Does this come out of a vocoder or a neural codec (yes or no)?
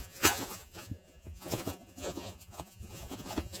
yes